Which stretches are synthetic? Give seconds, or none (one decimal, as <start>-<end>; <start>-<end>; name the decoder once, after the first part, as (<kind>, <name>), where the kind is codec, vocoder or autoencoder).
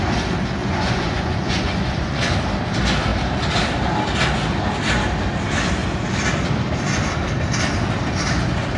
0.6-2.3 (vocoder, Vocos)